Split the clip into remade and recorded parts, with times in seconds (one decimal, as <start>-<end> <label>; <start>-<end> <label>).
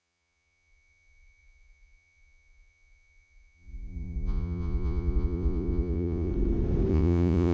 0.0-6.3 remade; 6.3-6.9 recorded; 6.9-7.5 remade